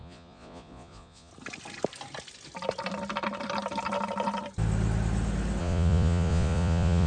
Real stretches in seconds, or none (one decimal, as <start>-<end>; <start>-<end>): 1.3-5.6